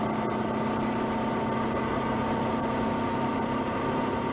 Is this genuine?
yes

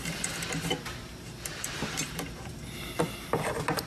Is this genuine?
no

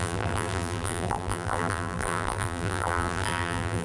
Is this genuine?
no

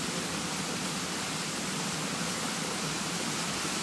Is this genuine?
no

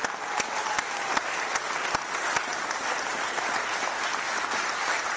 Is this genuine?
yes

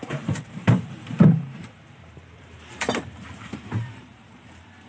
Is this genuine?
no